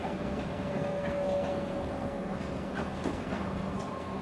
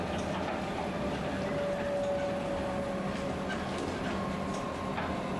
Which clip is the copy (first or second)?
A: first